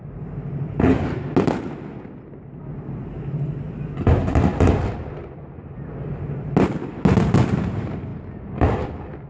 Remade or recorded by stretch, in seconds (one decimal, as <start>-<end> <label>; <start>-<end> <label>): 0.0-9.3 recorded